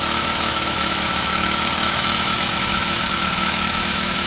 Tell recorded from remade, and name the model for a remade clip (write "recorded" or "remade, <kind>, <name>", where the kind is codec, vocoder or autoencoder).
remade, autoencoder, DAC-VAE